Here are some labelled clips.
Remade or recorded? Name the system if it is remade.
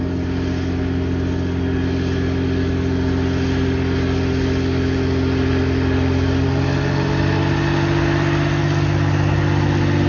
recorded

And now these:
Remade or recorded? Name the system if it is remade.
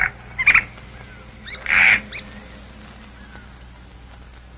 recorded